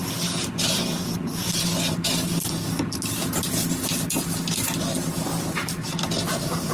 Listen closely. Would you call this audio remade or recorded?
recorded